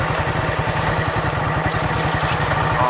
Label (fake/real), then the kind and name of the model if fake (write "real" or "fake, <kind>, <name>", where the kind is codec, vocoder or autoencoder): real